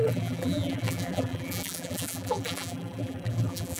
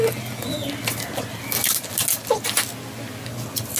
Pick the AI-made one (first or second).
first